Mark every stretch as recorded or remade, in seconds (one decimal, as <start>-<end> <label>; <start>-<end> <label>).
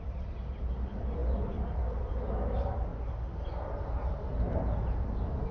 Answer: 0.0-5.5 recorded